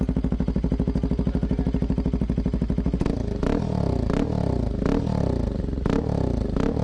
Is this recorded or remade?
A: recorded